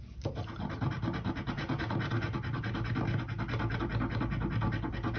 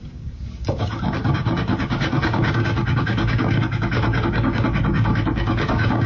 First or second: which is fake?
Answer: second